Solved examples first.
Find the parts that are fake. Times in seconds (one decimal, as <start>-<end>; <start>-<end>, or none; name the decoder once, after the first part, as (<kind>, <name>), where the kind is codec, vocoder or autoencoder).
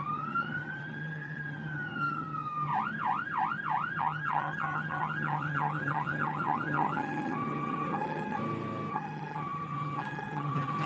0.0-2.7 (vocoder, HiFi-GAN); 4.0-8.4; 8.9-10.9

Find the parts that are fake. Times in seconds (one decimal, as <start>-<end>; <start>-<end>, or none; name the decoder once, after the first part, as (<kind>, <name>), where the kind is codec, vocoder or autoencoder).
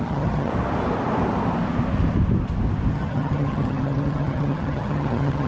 0.0-0.5 (vocoder, HiFi-GAN); 2.9-5.5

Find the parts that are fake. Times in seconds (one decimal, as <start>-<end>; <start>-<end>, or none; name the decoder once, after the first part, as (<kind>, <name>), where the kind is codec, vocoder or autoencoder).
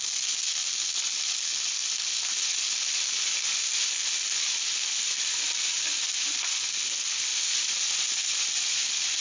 none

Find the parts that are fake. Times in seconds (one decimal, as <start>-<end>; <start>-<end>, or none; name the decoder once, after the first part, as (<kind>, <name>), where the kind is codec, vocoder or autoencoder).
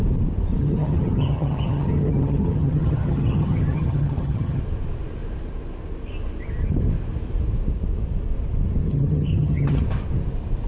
0.6-4.6 (vocoder, HiFi-GAN); 8.9-9.8